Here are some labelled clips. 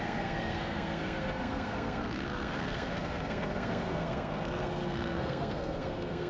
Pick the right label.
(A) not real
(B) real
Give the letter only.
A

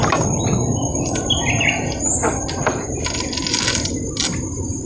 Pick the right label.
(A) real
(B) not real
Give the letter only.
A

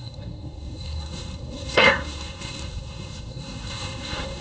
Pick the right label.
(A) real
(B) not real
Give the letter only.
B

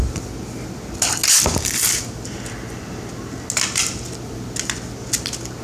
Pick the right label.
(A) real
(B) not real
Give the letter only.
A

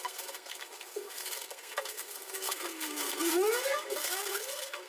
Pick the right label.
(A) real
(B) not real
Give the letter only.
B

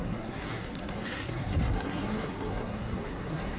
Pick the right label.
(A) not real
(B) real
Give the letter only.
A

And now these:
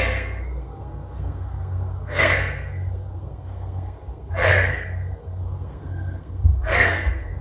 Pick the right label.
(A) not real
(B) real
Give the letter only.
A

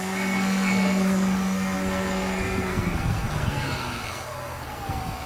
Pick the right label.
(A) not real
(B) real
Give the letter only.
A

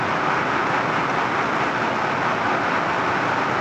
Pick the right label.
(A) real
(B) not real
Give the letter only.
A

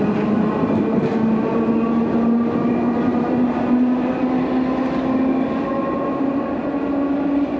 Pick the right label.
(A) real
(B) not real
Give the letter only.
A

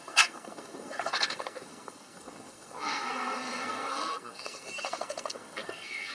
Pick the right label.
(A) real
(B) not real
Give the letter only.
B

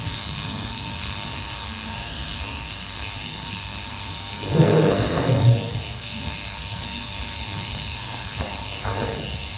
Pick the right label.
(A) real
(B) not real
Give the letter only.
B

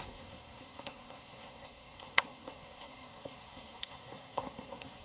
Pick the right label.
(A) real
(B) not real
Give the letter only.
B